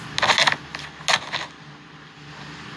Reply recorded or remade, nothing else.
recorded